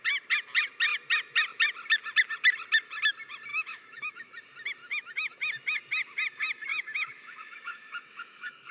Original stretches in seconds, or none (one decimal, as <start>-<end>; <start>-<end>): 0.0-3.5; 4.3-4.8; 5.4-6.7